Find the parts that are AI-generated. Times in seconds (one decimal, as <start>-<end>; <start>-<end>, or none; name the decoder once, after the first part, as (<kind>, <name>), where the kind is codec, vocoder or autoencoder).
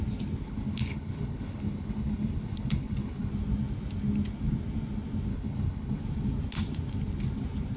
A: 0.4-3.3 (codec, HILCodec); 5.3-6.0